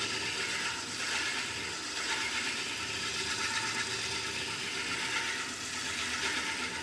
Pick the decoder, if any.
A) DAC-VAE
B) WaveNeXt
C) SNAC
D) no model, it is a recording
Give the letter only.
D